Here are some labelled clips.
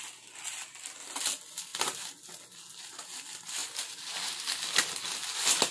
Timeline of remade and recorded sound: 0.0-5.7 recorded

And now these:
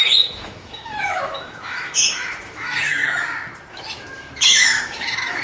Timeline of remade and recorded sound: 0.0-3.0 remade; 3.0-3.7 recorded; 3.7-5.4 remade

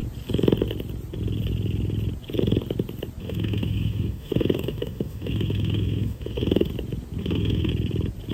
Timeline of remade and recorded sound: 0.0-3.2 recorded; 3.2-6.7 remade; 6.7-7.2 recorded; 7.2-7.7 remade; 7.7-8.3 recorded

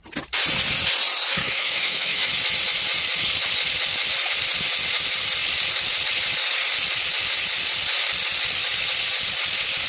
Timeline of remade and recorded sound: 0.0-1.3 recorded; 1.3-2.3 remade; 2.3-9.9 recorded

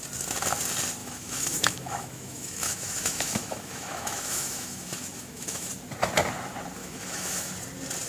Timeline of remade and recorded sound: 0.0-1.0 recorded; 1.0-5.7 remade; 5.7-6.8 recorded; 6.8-7.5 remade; 7.5-8.1 recorded

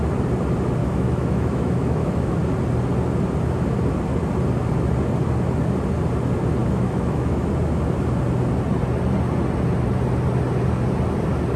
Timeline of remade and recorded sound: 0.0-0.8 recorded; 0.8-2.4 remade; 2.4-6.6 recorded; 6.6-7.5 remade; 7.5-11.6 recorded

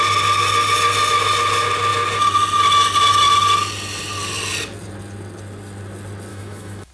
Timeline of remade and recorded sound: 0.0-6.3 recorded; 6.3-6.9 remade